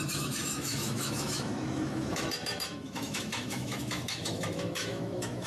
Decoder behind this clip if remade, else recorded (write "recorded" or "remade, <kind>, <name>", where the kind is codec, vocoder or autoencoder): remade, autoencoder, DAC-VAE